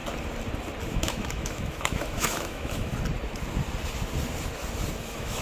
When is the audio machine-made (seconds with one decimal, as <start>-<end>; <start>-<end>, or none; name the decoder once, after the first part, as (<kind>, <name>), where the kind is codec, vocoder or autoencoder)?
0.9-2.9 (autoencoder, DAC-VAE); 5.0-5.4